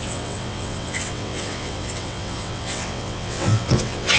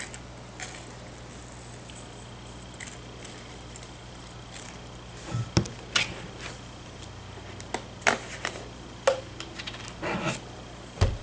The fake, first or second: first